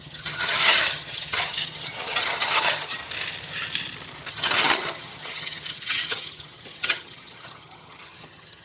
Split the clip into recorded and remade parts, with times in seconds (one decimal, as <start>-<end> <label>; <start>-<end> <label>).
0.0-3.0 remade; 3.0-4.3 recorded; 4.3-8.6 remade